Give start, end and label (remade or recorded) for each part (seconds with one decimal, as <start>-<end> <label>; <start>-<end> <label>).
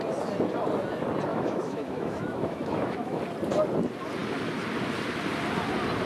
0.0-1.3 recorded; 1.3-3.2 remade; 3.2-6.1 recorded